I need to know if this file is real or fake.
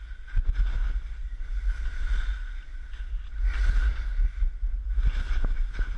real